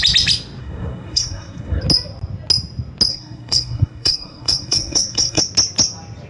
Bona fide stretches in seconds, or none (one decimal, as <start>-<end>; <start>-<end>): 0.0-0.6; 1.8-3.1; 5.4-6.3